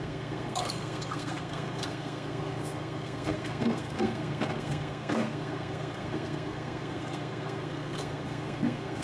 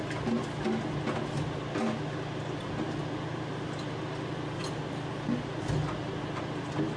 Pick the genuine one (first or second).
second